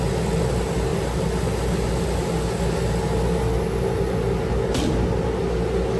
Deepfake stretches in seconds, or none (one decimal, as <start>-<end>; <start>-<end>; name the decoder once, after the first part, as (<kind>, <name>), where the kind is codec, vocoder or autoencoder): none